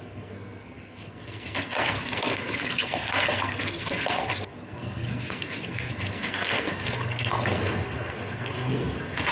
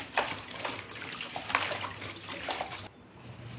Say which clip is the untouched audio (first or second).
second